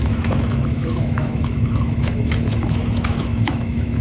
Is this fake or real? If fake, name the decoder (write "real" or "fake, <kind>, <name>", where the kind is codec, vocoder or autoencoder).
fake, autoencoder, DAC-VAE